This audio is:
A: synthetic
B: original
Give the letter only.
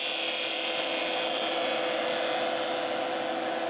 B